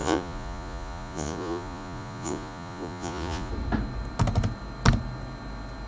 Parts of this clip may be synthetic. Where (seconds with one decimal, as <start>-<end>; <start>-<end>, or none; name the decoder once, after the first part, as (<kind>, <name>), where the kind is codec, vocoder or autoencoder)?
0.0-3.5 (vocoder, Vocos)